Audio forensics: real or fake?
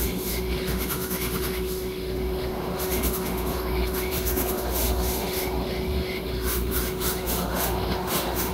fake